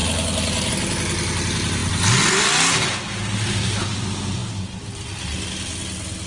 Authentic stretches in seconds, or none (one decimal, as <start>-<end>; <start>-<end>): 0.0-6.3